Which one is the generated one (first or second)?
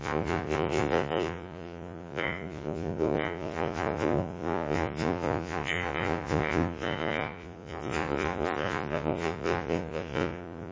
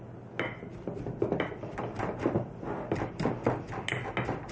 first